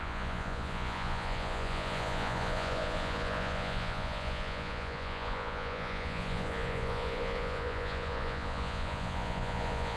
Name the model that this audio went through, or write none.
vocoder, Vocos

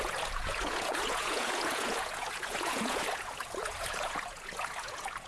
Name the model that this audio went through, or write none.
vocoder, Vocos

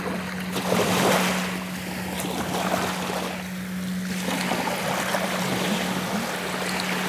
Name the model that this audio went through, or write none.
none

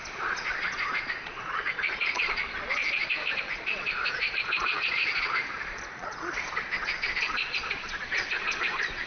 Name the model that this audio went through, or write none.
vocoder, Vocos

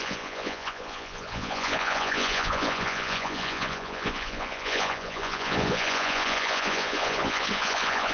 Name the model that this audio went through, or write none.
vocoder, Vocos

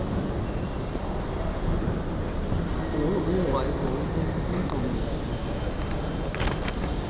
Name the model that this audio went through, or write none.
none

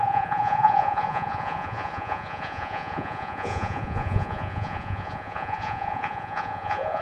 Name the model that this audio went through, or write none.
vocoder, Vocos